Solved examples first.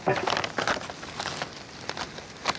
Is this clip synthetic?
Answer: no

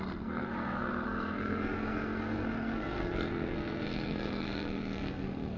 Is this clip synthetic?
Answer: yes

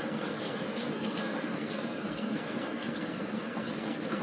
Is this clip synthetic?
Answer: yes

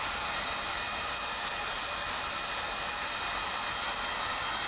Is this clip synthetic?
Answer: no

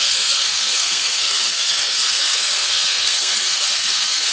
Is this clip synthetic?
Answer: yes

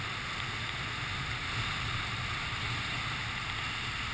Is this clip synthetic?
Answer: no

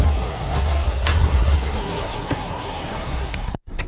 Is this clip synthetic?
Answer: yes